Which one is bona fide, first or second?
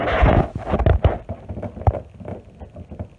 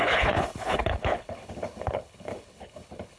first